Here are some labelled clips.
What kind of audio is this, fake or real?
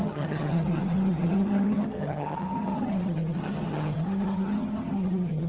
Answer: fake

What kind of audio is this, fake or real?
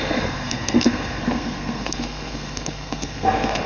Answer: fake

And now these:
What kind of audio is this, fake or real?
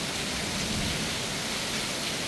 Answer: real